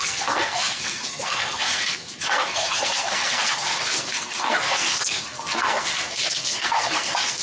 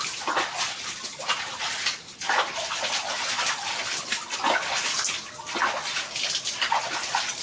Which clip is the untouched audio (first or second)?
second